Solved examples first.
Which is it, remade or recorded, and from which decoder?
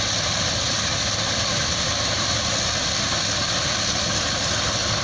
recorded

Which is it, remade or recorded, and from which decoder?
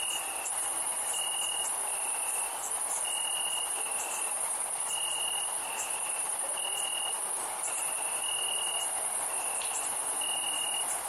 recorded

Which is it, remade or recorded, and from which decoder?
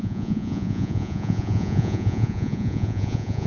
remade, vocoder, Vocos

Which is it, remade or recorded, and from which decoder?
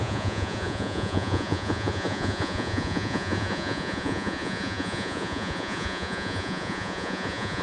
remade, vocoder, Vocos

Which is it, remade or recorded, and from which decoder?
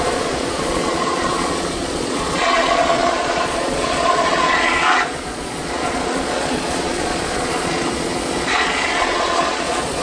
remade, vocoder, Vocos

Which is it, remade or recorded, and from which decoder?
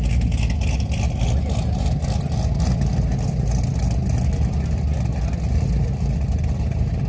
recorded